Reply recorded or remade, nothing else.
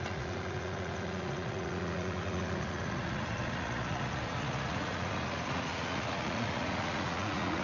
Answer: remade